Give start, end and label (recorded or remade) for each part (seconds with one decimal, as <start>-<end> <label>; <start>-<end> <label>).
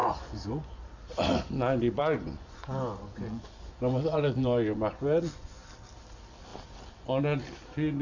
0.0-0.8 remade; 0.8-2.0 recorded; 2.0-5.7 remade; 5.7-8.0 recorded